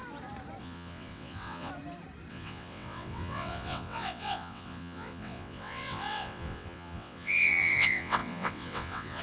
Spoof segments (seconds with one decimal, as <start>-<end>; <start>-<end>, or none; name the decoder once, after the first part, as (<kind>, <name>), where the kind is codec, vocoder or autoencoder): 0.6-1.7 (vocoder, WaveNeXt); 2.3-9.2

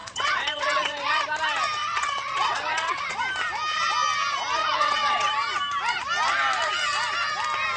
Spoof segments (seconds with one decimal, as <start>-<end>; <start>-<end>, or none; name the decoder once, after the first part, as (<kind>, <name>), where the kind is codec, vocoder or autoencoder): 0.0-1.2 (vocoder, WaveNeXt); 1.8-3.2; 4.6-5.3

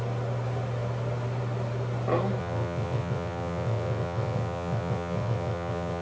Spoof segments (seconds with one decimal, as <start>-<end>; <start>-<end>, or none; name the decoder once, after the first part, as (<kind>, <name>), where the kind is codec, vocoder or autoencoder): 2.4-6.0 (vocoder, WaveNeXt)